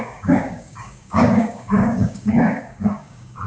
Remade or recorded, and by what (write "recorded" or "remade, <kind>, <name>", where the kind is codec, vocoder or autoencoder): remade, codec, DAC